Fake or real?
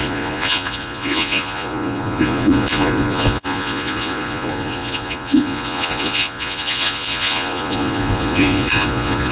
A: fake